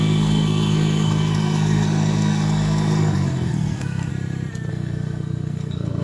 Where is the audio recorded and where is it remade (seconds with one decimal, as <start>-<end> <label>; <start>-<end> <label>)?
0.0-4.1 remade; 4.1-4.7 recorded; 4.7-6.0 remade